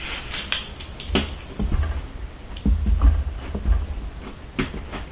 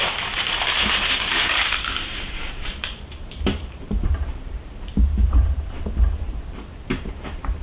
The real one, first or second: first